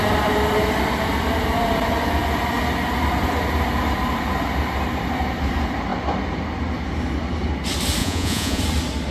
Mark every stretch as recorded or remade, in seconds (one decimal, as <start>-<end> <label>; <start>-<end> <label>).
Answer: 0.0-8.0 recorded; 8.0-8.6 remade; 8.6-9.1 recorded